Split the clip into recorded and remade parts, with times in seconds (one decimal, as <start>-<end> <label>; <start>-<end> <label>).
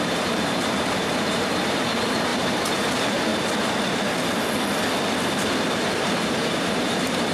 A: 0.0-3.3 remade; 3.3-6.0 recorded; 6.0-7.3 remade